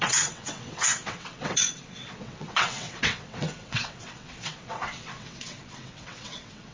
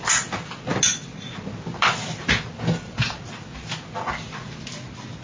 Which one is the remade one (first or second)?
first